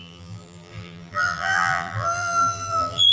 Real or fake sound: fake